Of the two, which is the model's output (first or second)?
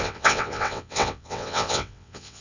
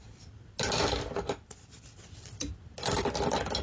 first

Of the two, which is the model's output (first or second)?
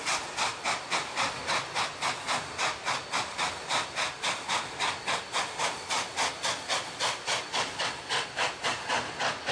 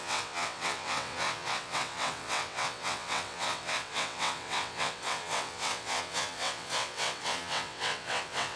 second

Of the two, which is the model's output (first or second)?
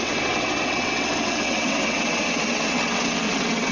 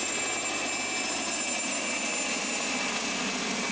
first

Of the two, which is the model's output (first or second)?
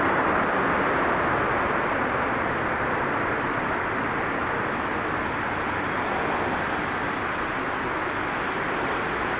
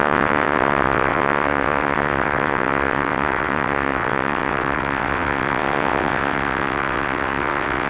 second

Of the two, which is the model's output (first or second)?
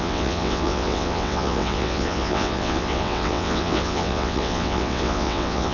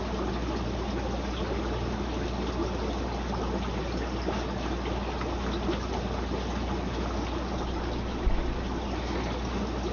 first